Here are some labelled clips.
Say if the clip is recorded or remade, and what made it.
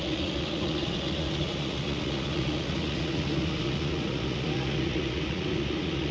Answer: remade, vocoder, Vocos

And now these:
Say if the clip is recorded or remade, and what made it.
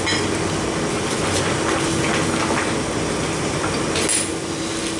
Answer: recorded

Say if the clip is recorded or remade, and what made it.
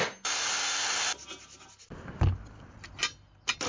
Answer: recorded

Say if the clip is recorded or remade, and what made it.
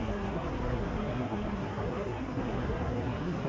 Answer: remade, codec, SNAC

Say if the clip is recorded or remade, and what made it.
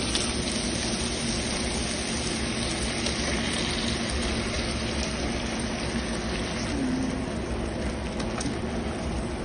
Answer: recorded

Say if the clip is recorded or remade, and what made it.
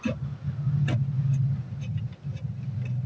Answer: recorded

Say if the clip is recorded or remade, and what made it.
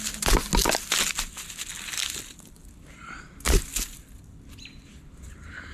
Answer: recorded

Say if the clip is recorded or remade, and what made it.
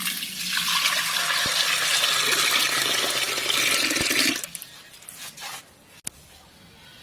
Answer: recorded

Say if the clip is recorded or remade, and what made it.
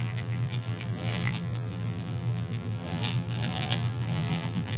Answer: remade, vocoder, BigVGAN v2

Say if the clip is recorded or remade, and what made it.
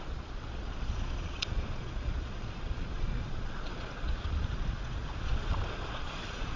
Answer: remade, vocoder, Vocos